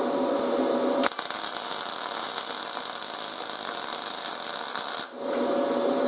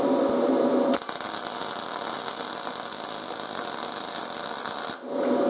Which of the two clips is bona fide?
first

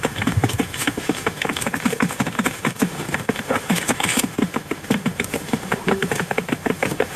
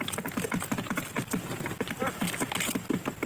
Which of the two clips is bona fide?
second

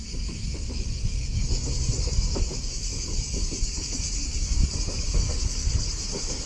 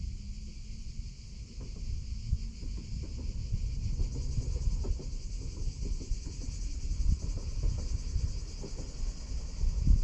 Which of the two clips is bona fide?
second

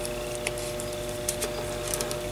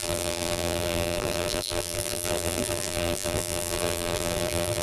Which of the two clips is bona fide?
first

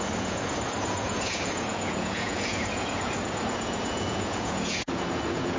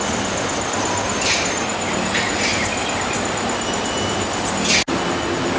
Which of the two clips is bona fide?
second